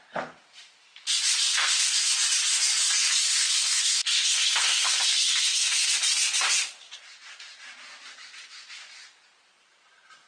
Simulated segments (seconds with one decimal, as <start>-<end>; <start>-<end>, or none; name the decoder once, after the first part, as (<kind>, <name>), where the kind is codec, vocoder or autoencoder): 1.5-2.1 (codec, SNAC); 3.3-5.9